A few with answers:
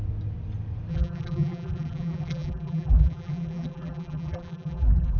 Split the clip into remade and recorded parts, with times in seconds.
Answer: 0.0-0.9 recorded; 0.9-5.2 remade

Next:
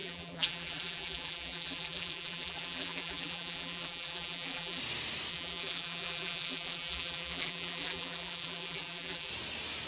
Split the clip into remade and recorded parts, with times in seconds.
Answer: 0.0-4.8 remade; 4.8-5.3 recorded; 5.3-9.3 remade; 9.3-9.9 recorded